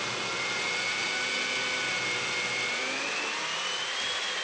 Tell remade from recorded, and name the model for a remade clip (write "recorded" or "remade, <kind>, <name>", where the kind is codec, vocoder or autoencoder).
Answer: recorded